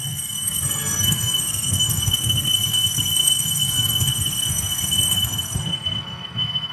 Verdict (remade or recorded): remade